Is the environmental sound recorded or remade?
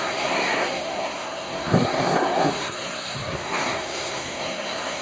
remade